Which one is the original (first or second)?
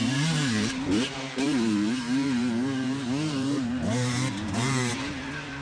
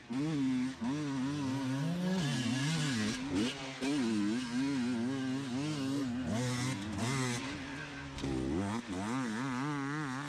second